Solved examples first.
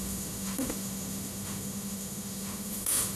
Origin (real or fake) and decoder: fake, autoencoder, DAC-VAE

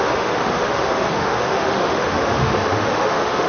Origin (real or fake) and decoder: fake, autoencoder, DAC-VAE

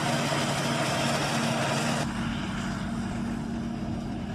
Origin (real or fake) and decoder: real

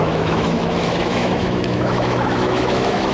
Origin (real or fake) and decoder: fake, autoencoder, DAC-VAE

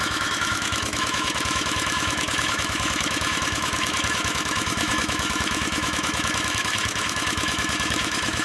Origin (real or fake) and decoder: fake, autoencoder, DAC-VAE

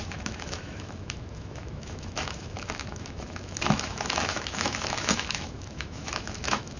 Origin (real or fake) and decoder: fake, autoencoder, DAC-VAE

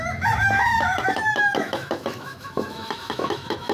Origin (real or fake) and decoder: fake, autoencoder, DAC-VAE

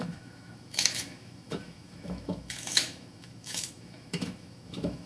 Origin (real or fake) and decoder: fake, autoencoder, DAC-VAE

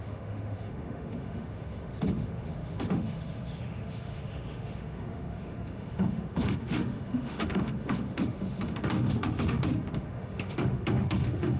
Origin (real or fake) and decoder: fake, autoencoder, DAC-VAE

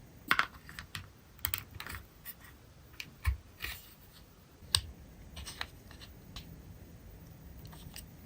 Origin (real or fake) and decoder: real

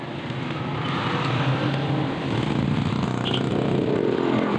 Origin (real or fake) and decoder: real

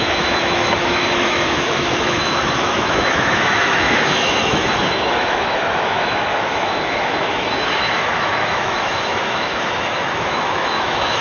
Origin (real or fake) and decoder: fake, autoencoder, DAC-VAE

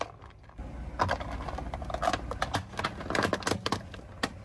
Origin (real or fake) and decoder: real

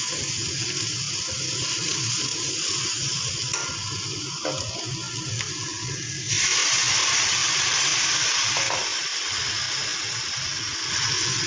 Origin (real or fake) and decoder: real